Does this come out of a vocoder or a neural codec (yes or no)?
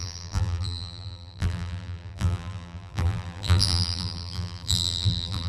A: yes